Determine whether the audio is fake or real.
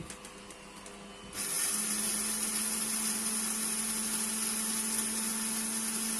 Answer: real